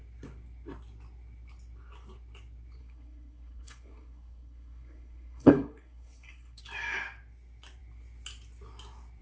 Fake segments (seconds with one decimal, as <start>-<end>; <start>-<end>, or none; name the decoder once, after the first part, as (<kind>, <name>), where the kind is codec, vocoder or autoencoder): 2.8-6.6 (codec, SNAC)